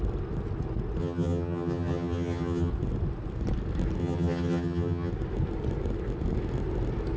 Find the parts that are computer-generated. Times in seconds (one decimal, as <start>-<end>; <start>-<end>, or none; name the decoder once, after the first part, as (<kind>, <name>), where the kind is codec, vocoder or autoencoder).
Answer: 1.0-2.7 (vocoder, HiFi-GAN); 4.0-5.1